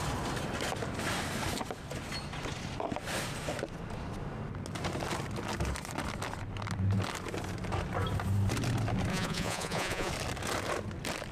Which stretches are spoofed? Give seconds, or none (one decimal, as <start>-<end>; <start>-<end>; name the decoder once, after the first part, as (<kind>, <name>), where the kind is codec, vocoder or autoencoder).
9.1-10.1 (vocoder, Vocos)